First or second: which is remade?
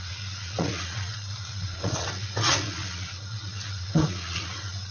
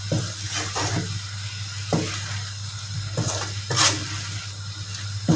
first